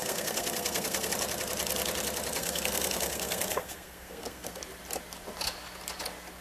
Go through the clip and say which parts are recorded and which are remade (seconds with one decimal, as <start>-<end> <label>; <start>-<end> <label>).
0.0-1.1 remade; 1.1-2.4 recorded; 2.4-4.6 remade; 4.6-6.4 recorded